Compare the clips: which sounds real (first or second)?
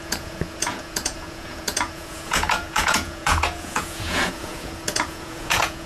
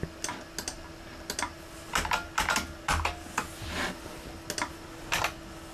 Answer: second